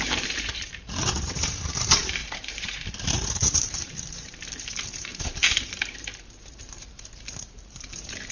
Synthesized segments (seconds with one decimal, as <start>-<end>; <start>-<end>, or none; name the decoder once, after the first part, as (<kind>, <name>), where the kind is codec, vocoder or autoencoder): 0.0-8.3 (vocoder, BigVGAN v2)

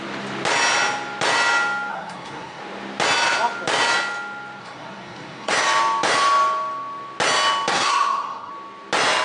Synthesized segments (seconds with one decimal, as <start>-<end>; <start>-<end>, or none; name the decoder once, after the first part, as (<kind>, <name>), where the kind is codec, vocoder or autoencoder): 1.9-2.6 (codec, SNAC); 4.6-5.5; 7.7-8.5

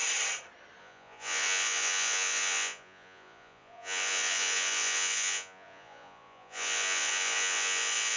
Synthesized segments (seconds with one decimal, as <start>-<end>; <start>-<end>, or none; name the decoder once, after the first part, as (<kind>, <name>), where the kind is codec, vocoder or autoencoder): 0.8-8.2 (vocoder, Vocos)

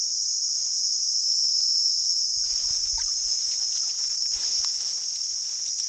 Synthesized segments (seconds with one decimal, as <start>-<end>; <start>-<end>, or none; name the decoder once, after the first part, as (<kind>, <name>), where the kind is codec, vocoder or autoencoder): 2.1-5.9 (vocoder, Vocos)

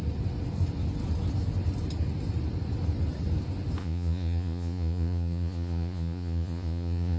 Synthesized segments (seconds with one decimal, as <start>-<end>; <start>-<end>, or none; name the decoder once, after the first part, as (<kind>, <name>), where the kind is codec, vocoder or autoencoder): 3.8-7.2 (vocoder, Vocos)